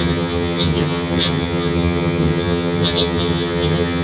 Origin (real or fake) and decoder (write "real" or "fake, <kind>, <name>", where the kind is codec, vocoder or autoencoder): fake, vocoder, HiFi-GAN